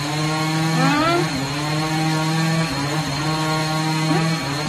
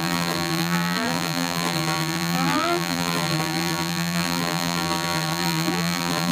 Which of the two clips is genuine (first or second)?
first